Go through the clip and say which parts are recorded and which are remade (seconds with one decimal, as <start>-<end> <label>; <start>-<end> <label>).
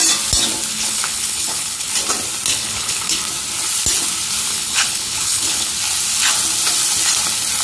0.0-0.7 recorded; 0.7-1.9 remade; 1.9-2.5 recorded; 2.5-3.2 remade; 3.2-4.5 recorded; 4.5-5.7 remade; 5.7-7.6 recorded